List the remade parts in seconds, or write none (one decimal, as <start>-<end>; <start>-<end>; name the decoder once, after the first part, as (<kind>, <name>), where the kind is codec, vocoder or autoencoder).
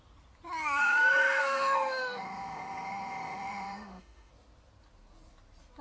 0.8-4.3 (autoencoder, DAC-VAE)